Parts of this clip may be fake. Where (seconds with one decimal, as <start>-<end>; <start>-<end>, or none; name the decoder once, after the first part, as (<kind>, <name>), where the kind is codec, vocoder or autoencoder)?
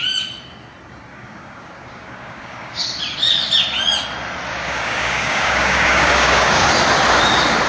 1.1-2.8 (codec, DAC); 4.5-6.7